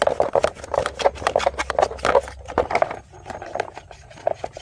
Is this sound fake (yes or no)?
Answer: no